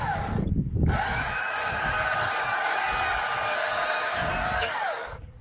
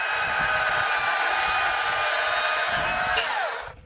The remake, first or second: first